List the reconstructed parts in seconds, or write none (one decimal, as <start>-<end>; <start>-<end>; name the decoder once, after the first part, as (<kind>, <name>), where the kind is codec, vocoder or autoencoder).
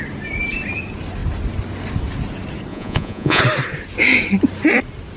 2.7-3.4 (vocoder, Vocos)